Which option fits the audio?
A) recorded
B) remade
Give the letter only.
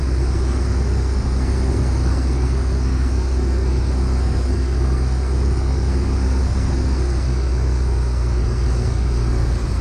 B